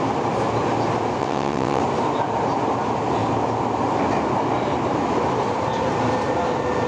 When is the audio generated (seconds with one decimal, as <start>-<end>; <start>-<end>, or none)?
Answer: 1.2-1.8